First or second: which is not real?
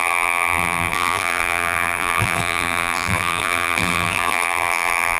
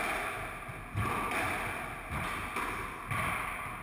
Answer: first